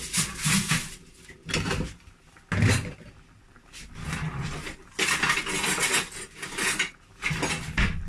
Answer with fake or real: real